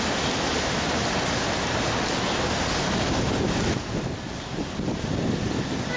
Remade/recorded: recorded